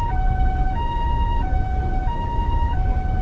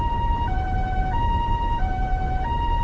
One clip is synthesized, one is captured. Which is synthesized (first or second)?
first